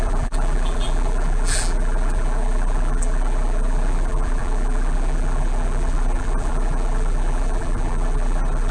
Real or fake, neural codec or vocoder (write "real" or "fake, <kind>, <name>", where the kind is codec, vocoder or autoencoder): fake, vocoder, BigVGAN v2